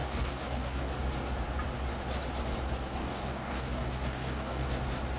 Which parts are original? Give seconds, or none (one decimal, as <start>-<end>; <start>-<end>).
0.9-3.0; 4.8-5.2